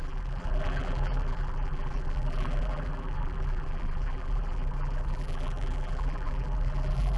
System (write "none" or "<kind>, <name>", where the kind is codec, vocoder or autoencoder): vocoder, BigVGAN v2